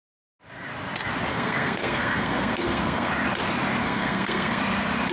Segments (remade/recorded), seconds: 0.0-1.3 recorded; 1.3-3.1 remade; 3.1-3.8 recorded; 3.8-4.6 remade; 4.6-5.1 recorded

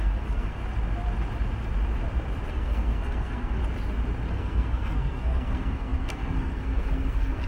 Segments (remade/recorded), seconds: 0.0-0.6 remade; 0.6-2.5 recorded; 2.5-3.6 remade; 3.6-4.3 recorded; 4.3-7.5 remade

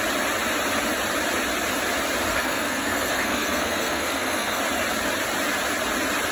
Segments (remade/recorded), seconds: 0.0-2.3 recorded; 2.3-4.6 remade; 4.6-6.3 recorded

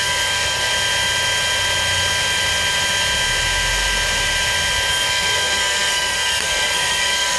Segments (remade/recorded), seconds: 0.0-0.7 remade; 0.7-4.9 recorded; 4.9-7.4 remade

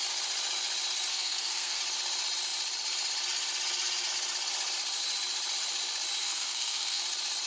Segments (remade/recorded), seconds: 0.0-1.1 recorded; 1.1-1.8 remade; 1.8-6.2 recorded; 6.2-7.0 remade; 7.0-7.5 recorded

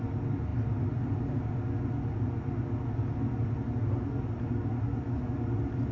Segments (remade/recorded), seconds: 0.0-5.9 recorded